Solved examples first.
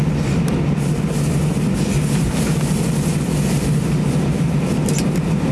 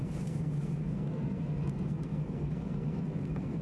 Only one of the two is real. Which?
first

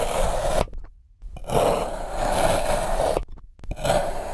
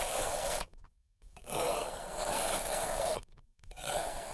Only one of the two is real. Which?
first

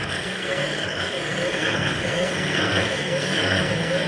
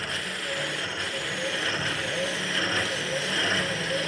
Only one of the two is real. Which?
second